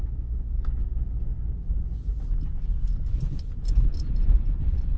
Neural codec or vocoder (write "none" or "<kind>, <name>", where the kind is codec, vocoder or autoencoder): none